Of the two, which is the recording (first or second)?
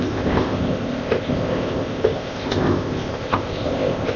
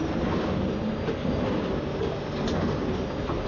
second